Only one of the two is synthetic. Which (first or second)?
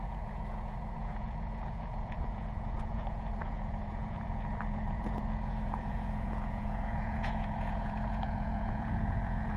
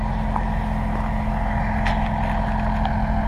first